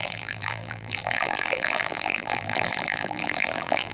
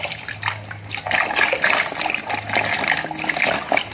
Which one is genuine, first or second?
second